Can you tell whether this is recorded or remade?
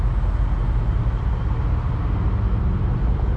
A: recorded